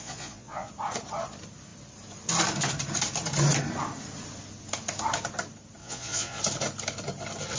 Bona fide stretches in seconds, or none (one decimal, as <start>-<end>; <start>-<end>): 0.7-5.8; 6.4-7.6

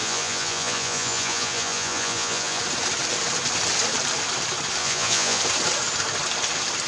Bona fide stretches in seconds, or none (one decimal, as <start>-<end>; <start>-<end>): 2.6-4.8; 5.4-6.9

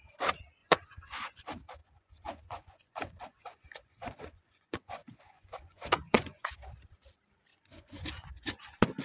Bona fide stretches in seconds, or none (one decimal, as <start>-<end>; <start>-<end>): 0.0-0.6; 1.4-1.8; 6.5-7.5; 8.6-9.0

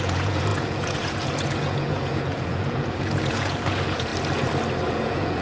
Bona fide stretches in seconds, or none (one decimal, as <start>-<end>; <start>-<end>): 4.1-4.9

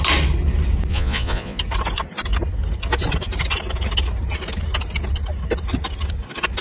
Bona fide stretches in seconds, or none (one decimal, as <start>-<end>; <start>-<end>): 0.0-0.9; 1.6-6.6

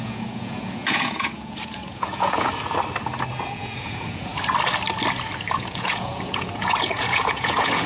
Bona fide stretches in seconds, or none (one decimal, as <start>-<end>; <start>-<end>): 2.5-3.3; 4.3-5.5

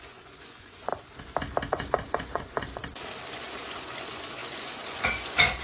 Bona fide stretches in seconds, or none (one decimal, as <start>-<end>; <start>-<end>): 0.9-1.7; 2.8-3.3